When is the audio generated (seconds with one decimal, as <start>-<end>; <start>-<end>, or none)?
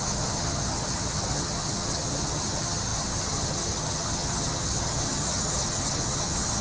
0.0-6.6